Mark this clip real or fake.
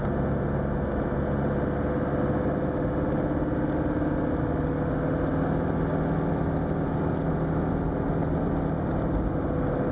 real